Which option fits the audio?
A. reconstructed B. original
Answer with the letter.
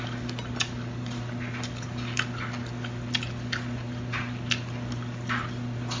B